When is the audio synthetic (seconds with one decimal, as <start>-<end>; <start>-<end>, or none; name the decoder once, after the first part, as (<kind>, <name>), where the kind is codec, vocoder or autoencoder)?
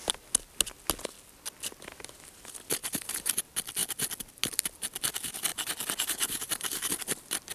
2.8-3.4 (vocoder, BigVGAN v2); 5.5-6.9